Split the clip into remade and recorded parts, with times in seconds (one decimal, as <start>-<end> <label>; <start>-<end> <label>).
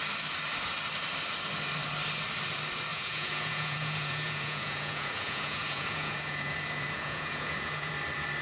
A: 0.0-2.9 recorded; 2.9-7.9 remade; 7.9-8.4 recorded